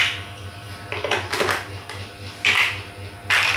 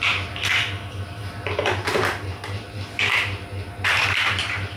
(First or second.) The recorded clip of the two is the first